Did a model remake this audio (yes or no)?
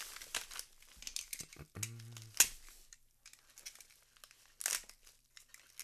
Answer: no